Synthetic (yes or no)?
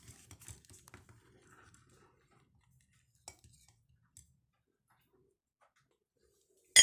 no